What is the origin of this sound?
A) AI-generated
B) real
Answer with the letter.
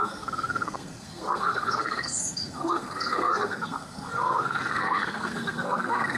A